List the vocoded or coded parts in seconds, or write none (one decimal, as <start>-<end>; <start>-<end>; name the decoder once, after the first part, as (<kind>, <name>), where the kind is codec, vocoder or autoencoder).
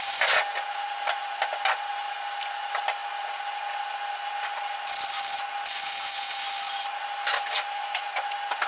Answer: none